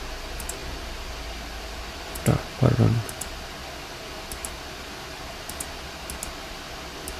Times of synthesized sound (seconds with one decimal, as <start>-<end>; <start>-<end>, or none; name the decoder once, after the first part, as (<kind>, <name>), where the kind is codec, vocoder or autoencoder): none